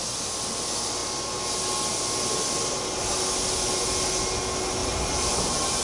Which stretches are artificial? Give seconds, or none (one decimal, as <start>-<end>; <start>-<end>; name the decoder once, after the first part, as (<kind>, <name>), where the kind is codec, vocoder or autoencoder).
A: 4.8-5.8 (vocoder, BigVGAN v2)